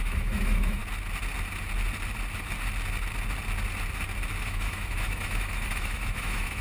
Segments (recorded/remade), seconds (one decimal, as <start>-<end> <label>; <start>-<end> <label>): 0.0-0.8 remade; 0.8-4.4 recorded; 4.4-6.6 remade